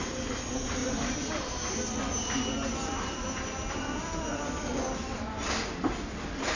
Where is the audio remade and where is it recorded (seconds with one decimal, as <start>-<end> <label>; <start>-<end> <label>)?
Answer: 0.0-0.8 recorded; 0.8-4.8 remade; 4.8-6.6 recorded